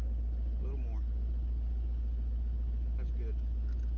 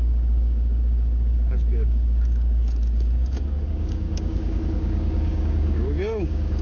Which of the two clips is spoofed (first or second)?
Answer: second